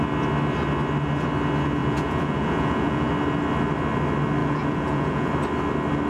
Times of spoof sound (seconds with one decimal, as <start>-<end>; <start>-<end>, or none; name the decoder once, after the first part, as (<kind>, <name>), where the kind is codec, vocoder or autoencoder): 1.8-3.1 (vocoder, Vocos); 4.4-5.3